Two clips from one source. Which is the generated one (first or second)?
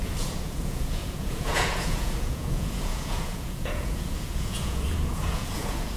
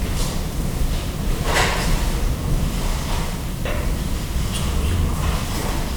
first